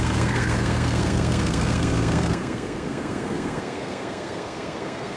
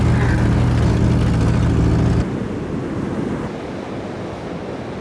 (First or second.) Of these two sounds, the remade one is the first